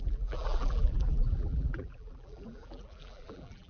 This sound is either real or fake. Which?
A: fake